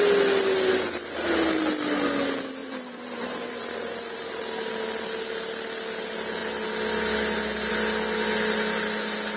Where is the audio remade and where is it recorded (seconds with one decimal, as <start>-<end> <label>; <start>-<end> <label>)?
0.0-0.7 recorded; 0.7-1.3 remade; 1.3-2.6 recorded; 2.6-4.4 remade; 4.4-9.4 recorded